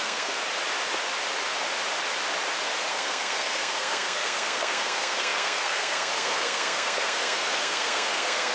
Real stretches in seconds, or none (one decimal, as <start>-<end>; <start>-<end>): 0.4-2.9